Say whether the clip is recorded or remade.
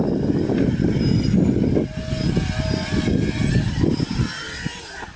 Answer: recorded